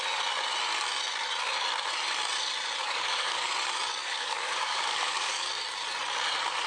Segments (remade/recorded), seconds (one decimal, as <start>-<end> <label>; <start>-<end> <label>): 0.0-2.8 recorded; 2.8-3.5 remade; 3.5-4.0 recorded; 4.0-5.5 remade; 5.5-6.7 recorded